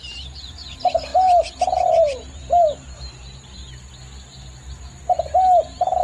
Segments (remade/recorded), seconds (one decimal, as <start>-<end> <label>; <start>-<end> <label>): 0.0-3.6 remade; 3.6-5.2 recorded; 5.2-6.0 remade